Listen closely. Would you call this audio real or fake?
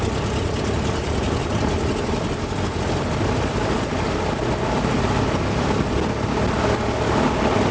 real